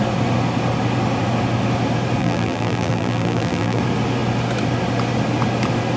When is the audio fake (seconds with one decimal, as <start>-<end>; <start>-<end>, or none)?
2.2-3.8